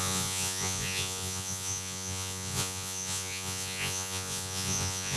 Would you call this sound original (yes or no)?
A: no